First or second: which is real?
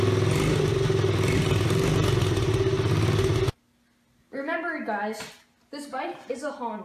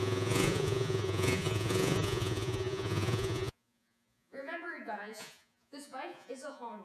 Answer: first